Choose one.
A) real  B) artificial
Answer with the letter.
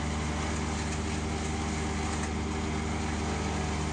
A